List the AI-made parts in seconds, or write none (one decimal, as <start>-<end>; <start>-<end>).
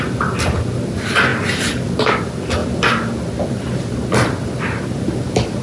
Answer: none